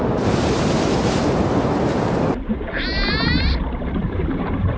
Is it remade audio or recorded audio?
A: remade